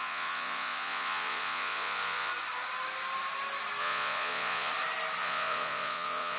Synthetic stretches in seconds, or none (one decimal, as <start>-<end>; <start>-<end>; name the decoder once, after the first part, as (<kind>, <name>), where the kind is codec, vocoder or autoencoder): 0.0-2.3 (vocoder, Vocos); 3.8-4.7; 5.2-6.4